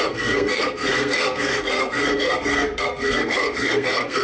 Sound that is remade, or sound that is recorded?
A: remade